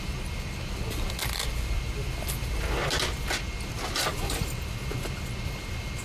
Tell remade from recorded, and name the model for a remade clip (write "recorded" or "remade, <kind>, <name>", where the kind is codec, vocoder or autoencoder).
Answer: recorded